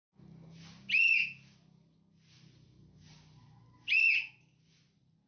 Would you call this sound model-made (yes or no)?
no